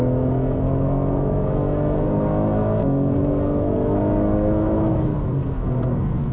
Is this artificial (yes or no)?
yes